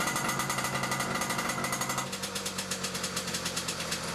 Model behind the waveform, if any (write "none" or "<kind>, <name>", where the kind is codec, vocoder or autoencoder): none